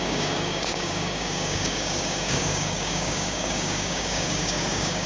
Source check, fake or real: fake